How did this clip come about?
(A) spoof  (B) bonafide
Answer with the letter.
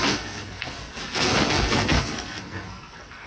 A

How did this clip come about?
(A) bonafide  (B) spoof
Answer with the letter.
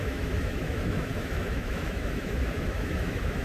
B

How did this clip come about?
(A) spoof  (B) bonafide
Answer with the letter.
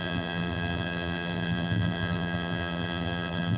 A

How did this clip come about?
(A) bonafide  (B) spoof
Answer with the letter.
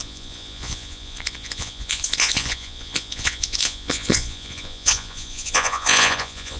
B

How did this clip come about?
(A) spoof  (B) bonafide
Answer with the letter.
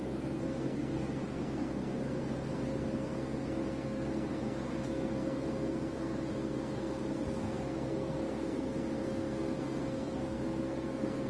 A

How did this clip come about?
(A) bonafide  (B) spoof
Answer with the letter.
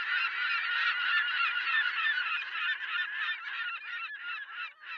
A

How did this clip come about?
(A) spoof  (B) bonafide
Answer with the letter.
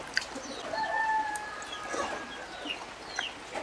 B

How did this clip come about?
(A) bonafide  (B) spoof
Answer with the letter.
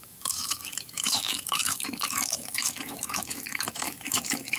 B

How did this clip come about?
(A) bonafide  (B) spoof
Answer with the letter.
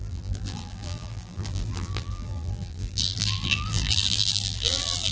B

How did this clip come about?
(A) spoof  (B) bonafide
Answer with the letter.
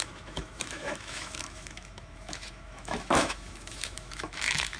A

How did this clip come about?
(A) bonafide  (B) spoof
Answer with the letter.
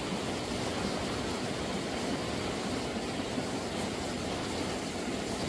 A